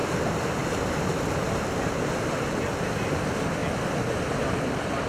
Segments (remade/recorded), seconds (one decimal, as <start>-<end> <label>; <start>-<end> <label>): 0.0-5.1 recorded